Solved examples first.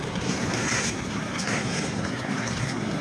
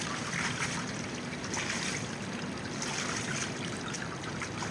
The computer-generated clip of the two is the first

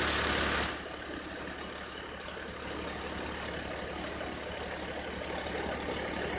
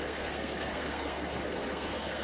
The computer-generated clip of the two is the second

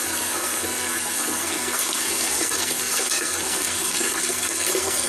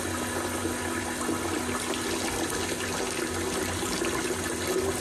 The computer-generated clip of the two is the first